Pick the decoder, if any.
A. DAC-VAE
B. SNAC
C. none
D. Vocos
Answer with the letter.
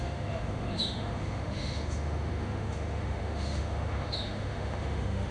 A